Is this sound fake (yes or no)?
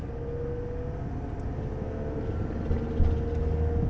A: no